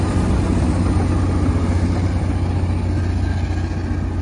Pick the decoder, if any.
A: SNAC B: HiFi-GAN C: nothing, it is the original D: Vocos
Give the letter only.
C